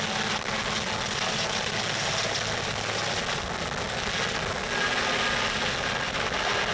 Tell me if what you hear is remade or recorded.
recorded